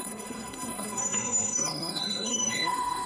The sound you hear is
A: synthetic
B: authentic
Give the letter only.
A